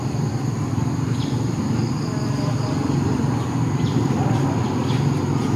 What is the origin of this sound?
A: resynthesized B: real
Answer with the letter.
B